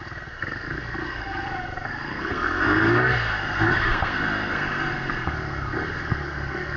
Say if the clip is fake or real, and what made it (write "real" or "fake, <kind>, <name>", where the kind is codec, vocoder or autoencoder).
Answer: fake, codec, SNAC